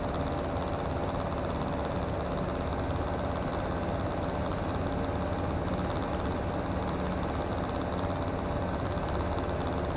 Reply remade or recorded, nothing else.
recorded